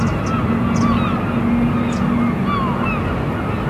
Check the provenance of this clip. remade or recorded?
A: recorded